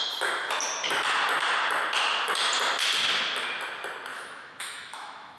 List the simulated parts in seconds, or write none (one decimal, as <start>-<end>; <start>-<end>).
4.1-5.4